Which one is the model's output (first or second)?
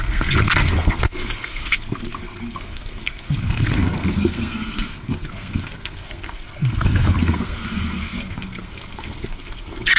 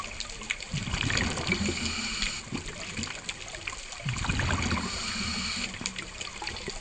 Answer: first